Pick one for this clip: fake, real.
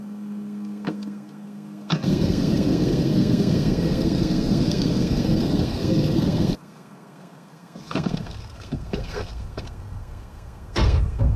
fake